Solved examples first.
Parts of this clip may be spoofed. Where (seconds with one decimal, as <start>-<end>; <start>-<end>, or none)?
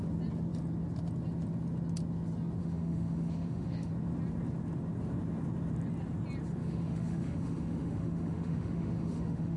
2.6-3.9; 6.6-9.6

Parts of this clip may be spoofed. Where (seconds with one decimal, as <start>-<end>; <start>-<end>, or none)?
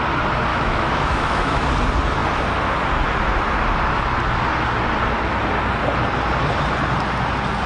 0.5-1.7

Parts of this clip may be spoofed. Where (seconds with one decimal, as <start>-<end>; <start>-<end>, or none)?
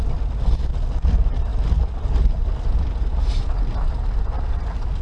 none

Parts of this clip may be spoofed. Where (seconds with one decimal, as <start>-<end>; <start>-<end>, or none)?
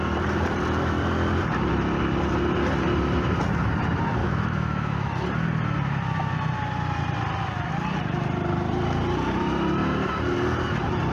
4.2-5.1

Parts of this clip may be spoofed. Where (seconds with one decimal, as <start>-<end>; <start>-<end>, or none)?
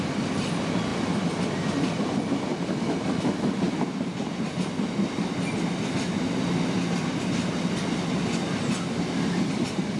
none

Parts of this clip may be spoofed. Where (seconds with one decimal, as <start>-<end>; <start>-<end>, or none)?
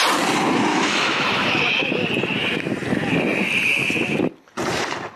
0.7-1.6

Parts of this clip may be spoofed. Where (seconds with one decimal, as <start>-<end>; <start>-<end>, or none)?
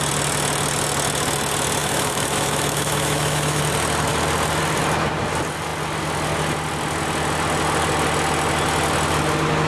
1.8-3.6